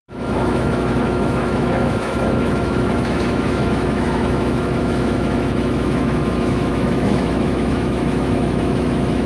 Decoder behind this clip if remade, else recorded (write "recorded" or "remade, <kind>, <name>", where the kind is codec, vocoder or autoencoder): remade, autoencoder, DAC-VAE